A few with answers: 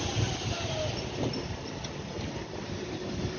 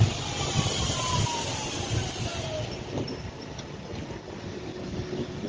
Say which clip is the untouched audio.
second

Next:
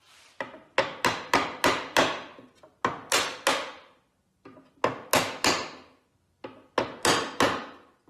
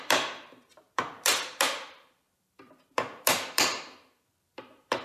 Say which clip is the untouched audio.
first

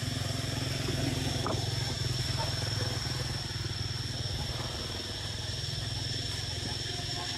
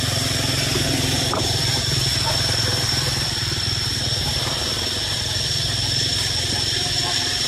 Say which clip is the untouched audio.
first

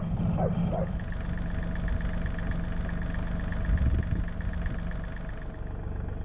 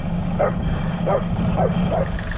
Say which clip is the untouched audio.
first